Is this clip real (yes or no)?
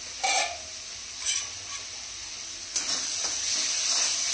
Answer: yes